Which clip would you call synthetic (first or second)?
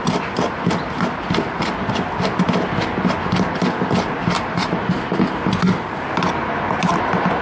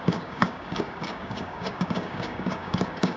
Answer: second